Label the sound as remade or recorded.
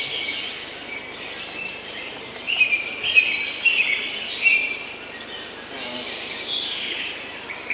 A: remade